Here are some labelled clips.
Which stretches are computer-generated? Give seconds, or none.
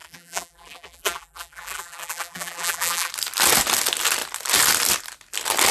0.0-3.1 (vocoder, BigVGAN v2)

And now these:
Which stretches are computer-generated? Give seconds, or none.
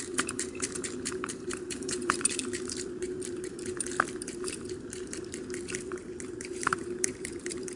0.0-2.4 (vocoder, BigVGAN v2); 6.4-7.8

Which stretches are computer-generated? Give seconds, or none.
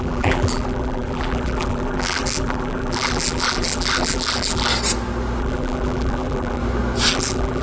0.0-4.7 (vocoder, BigVGAN v2); 5.4-6.6; 7.1-7.6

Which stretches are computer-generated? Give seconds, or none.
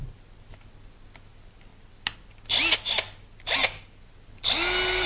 none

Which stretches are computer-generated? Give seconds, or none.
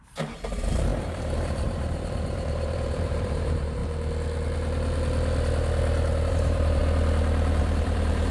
0.0-3.8 (vocoder, BigVGAN v2); 6.3-6.8; 7.6-8.3